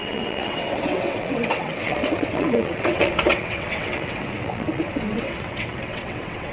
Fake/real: fake